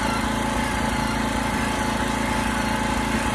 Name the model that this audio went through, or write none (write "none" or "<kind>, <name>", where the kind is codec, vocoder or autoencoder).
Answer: none